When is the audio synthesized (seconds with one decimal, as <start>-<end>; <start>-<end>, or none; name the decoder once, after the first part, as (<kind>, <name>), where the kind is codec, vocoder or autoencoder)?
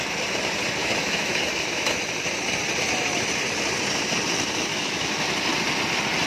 0.8-2.0 (autoencoder, DAC-VAE); 4.7-5.2